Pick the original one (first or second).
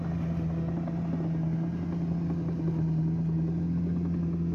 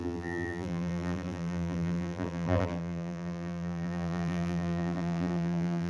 first